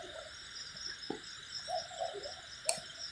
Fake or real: real